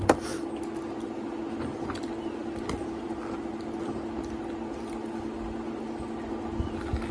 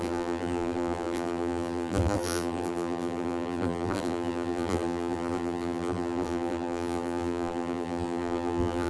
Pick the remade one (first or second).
second